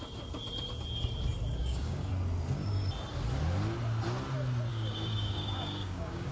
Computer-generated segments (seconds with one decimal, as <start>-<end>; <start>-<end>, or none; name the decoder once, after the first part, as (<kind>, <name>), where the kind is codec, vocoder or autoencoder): 1.6-2.1 (codec, DAC); 4.7-6.3